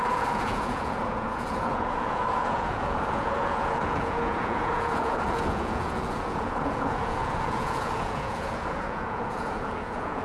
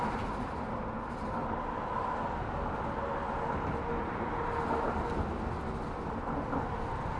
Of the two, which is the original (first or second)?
second